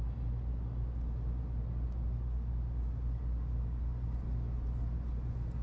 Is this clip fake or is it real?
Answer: real